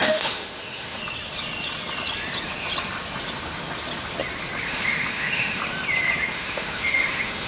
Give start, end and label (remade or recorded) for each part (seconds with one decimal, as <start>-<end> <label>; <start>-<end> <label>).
0.0-1.0 remade; 1.0-4.7 recorded; 4.7-5.6 remade; 5.6-6.3 recorded; 6.3-7.5 remade